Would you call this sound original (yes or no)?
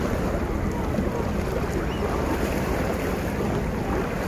yes